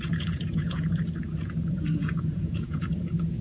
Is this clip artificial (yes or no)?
yes